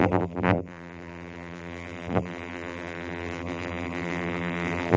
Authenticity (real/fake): fake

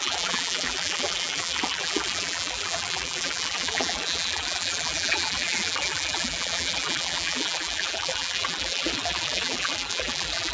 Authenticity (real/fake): fake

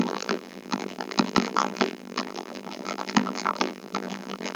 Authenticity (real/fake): fake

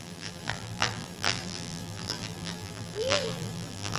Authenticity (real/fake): fake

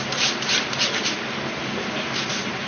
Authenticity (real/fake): fake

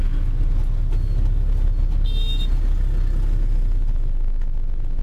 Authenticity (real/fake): real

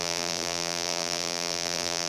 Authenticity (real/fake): fake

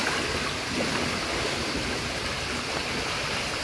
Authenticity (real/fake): real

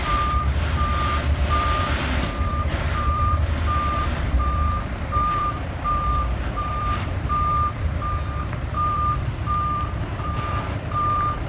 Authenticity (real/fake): fake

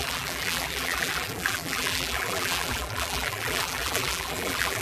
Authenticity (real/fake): fake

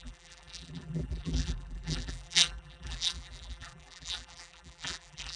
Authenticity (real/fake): fake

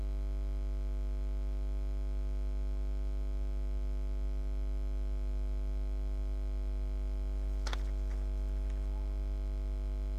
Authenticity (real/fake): fake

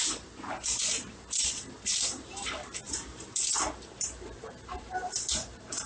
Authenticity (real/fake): fake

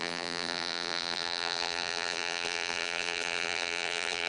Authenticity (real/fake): fake